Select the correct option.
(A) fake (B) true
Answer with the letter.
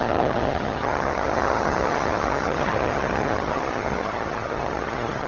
A